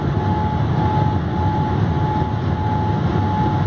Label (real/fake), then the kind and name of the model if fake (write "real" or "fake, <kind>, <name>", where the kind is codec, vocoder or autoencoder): real